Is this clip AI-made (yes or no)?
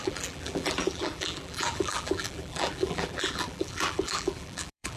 yes